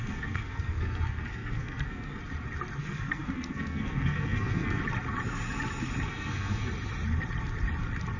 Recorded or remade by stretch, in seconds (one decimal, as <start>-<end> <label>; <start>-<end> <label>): 0.0-2.2 remade; 2.2-2.8 recorded; 2.8-4.8 remade; 4.8-6.1 recorded; 6.1-6.7 remade; 6.7-8.2 recorded